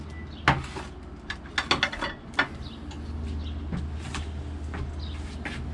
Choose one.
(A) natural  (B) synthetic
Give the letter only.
A